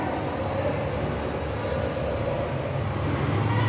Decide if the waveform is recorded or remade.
recorded